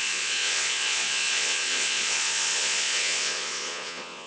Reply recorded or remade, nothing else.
remade